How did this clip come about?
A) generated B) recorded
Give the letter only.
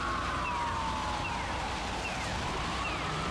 B